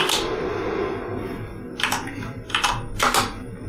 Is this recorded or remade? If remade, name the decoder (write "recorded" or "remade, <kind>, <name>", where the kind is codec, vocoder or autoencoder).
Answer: recorded